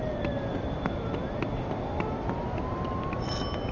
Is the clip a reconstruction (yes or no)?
no